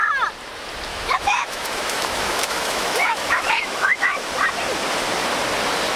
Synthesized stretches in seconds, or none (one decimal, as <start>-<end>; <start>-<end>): 0.9-4.3